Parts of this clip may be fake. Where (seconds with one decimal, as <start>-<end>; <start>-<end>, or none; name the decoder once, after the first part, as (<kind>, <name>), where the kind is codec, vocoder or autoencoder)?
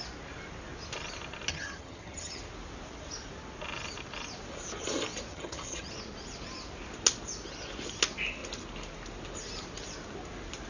1.5-2.4 (vocoder, HiFi-GAN); 5.3-5.9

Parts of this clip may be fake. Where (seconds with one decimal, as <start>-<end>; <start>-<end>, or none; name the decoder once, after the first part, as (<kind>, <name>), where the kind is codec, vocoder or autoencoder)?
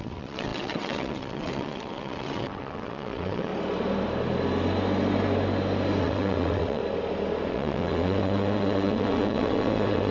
0.0-3.5 (vocoder, WaveNeXt); 6.0-6.8; 7.5-10.1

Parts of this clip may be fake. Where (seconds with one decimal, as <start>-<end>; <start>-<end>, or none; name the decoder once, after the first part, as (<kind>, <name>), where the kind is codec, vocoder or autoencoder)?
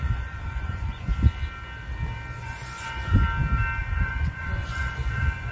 0.0-1.1 (vocoder, Vocos); 2.4-3.2; 3.8-5.5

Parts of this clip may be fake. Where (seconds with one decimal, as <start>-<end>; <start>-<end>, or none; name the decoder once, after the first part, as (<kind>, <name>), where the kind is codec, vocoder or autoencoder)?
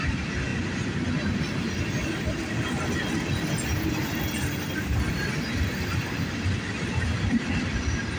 none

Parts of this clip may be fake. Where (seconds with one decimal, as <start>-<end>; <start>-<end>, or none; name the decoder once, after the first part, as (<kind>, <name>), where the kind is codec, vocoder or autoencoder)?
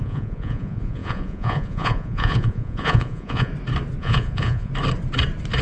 0.0-3.5 (vocoder, Vocos); 4.0-4.7